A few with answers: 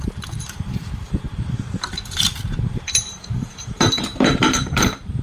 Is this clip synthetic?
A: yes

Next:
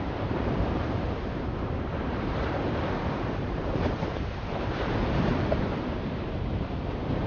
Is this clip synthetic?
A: yes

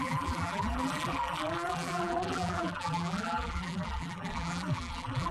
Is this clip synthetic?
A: yes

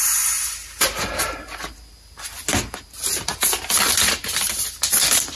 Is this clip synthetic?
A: no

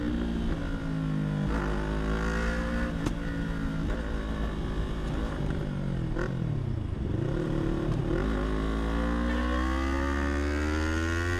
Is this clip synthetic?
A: no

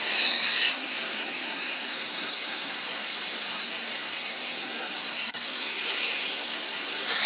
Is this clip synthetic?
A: yes